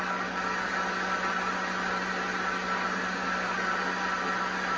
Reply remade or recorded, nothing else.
recorded